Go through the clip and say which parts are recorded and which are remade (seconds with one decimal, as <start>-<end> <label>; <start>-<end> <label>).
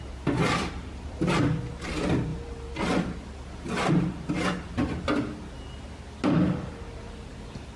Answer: 0.0-7.8 recorded